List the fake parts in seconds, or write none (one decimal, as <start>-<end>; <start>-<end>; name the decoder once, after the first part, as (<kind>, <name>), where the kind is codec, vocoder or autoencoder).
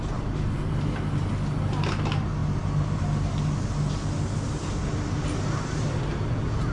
none